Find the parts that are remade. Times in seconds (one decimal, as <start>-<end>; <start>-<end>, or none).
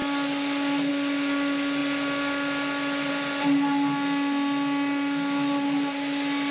none